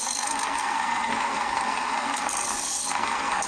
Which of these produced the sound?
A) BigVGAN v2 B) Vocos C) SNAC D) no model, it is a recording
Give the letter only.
C